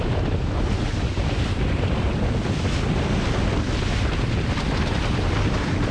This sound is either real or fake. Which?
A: real